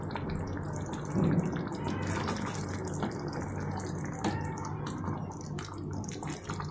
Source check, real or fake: real